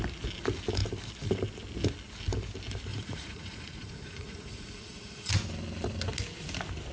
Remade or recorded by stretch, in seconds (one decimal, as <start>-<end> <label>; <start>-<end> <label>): 0.0-2.9 recorded; 2.9-5.3 remade; 5.3-6.9 recorded